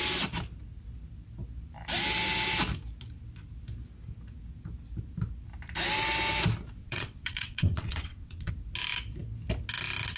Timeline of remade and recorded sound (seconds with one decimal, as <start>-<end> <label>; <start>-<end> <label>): 0.0-6.8 recorded; 6.8-8.5 remade; 8.5-10.2 recorded